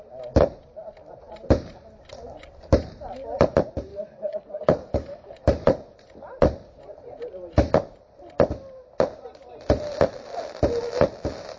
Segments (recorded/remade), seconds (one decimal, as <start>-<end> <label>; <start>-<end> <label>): 0.0-3.9 recorded; 3.9-5.3 remade; 5.3-11.6 recorded